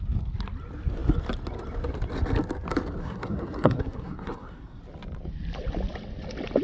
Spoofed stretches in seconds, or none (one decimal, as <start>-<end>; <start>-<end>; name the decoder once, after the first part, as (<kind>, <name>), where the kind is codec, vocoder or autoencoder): 3.0-4.8 (codec, SNAC)